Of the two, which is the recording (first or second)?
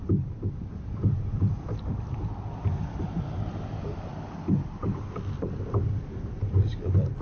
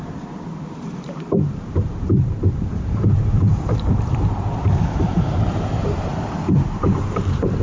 first